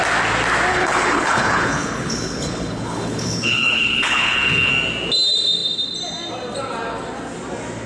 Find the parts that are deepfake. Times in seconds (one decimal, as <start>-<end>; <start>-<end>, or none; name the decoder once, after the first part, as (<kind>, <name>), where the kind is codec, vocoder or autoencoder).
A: 0.7-4.7 (codec, HILCodec)